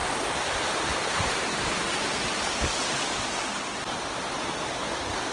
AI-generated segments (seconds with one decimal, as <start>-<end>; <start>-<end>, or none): 3.7-4.7